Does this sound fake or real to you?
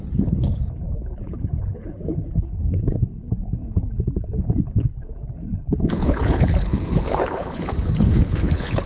fake